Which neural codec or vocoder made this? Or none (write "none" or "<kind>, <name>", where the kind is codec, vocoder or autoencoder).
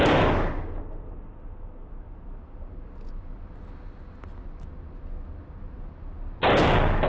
none